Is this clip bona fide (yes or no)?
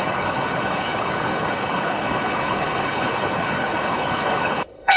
no